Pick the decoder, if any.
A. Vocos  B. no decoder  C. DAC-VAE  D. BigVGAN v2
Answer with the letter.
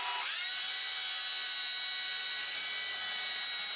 B